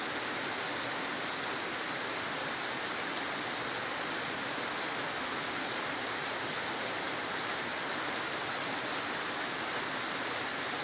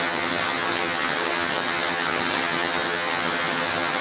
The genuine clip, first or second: first